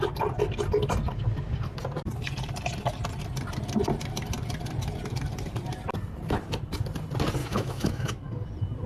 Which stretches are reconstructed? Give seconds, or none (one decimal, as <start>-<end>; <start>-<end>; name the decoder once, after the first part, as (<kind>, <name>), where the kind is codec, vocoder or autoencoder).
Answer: 7.4-8.2 (autoencoder, DAC-VAE)